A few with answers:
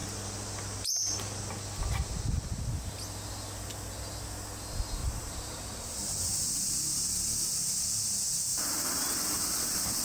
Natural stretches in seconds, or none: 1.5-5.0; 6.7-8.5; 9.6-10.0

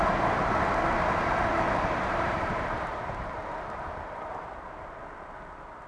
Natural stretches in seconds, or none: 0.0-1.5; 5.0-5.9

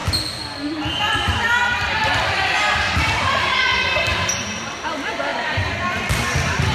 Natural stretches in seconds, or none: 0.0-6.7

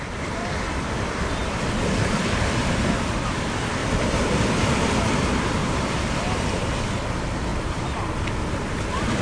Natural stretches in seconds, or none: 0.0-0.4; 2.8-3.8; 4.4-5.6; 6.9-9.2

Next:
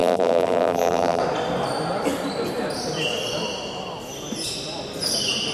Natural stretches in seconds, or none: 1.2-5.5

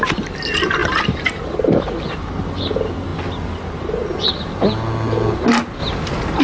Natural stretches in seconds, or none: 0.0-0.8; 2.4-5.8

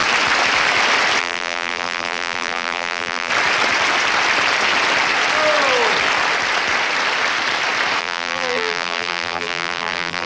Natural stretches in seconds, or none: 0.0-1.2; 3.3-8.0